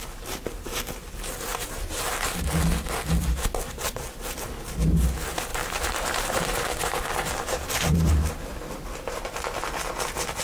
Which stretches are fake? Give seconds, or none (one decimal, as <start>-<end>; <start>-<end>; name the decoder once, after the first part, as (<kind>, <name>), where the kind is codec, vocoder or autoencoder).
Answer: 1.5-2.5 (vocoder, BigVGAN v2); 5.5-8.3